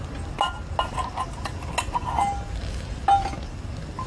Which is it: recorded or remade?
recorded